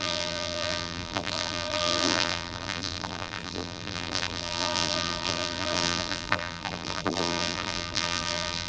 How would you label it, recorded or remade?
remade